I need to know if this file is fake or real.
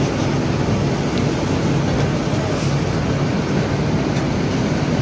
real